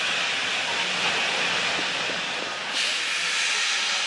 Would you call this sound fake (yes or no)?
no